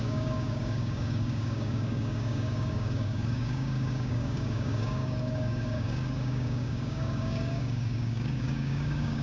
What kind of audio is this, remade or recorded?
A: remade